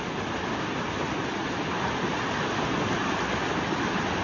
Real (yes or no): yes